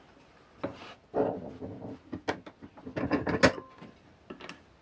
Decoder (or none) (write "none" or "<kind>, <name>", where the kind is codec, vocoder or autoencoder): none